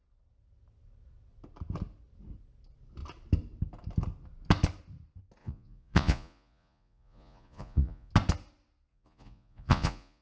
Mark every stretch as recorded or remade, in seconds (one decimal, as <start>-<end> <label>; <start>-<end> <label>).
0.0-5.4 recorded; 5.4-8.1 remade; 8.1-8.9 recorded; 8.9-10.2 remade